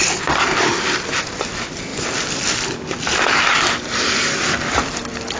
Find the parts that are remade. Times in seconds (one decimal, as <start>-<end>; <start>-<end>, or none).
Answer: 0.0-1.4